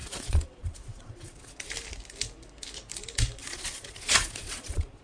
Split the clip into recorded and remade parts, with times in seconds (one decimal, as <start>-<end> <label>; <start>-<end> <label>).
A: 0.0-1.7 remade; 1.7-3.4 recorded; 3.4-5.0 remade